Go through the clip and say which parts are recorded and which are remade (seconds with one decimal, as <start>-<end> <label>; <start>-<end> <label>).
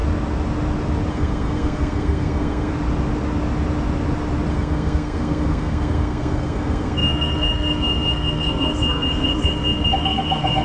0.0-1.1 recorded; 1.1-2.7 remade; 2.7-4.5 recorded; 4.5-10.6 remade